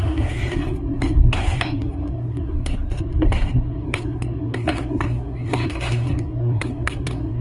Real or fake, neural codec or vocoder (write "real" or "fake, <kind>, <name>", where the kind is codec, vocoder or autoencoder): fake, codec, SNAC